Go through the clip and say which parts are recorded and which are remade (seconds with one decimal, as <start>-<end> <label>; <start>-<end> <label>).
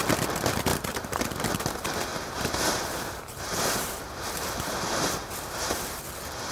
0.0-0.7 recorded; 0.7-1.4 remade; 1.4-2.1 recorded; 2.1-6.0 remade; 6.0-6.5 recorded